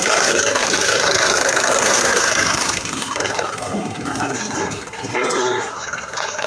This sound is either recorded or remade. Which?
remade